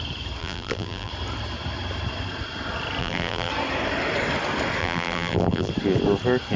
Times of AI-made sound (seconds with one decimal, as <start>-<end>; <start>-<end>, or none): 0.4-1.1; 3.0-3.5; 4.8-5.7